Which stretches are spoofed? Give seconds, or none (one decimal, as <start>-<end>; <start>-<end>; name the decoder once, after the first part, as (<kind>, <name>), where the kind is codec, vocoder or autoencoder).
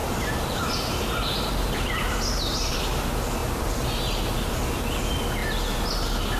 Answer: 0.0-2.8 (vocoder, BigVGAN v2)